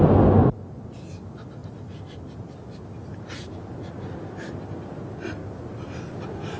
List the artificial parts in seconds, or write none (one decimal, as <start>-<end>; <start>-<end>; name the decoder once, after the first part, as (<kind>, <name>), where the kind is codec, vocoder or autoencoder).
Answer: none